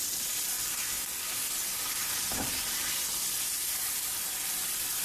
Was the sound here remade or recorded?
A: recorded